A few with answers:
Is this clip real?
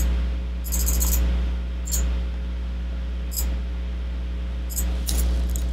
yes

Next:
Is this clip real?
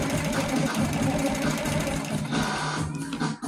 yes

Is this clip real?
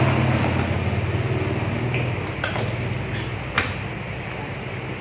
yes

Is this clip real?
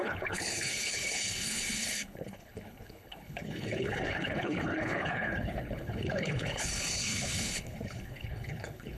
no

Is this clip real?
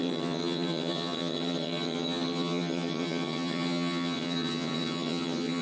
no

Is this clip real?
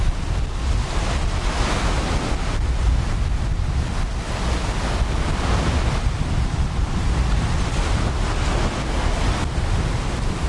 yes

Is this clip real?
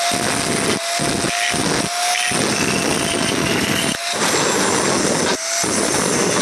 yes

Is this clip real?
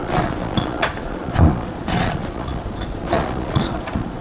no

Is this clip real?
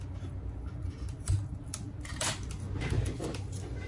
yes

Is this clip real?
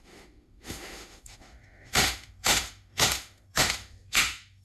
no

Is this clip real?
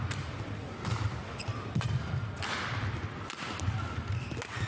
yes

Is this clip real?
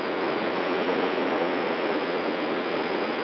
no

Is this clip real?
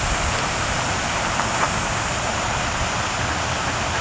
yes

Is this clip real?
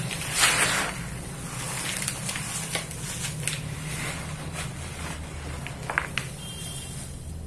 yes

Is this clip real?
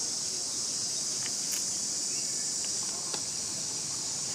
yes